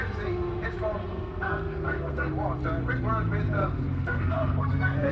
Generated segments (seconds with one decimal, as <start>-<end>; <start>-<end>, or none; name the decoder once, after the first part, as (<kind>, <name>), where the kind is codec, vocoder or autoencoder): 1.0-2.3 (codec, SNAC); 3.6-5.1